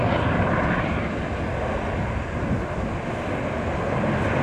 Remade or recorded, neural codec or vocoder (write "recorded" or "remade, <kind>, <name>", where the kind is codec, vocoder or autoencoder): recorded